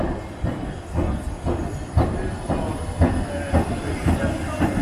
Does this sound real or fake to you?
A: real